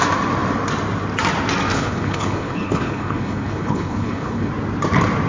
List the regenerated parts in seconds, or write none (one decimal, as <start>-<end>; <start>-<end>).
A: 1.7-4.5